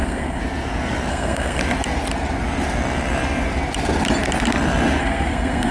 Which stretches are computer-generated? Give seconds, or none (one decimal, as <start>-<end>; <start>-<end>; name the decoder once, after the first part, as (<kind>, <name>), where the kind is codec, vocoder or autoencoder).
0.0-0.4 (codec, SNAC); 1.1-1.6; 5.0-5.7